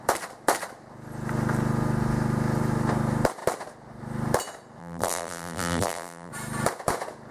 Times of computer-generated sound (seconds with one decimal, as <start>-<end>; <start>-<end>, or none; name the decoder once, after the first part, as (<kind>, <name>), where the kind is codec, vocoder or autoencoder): 4.8-6.3 (vocoder, BigVGAN v2)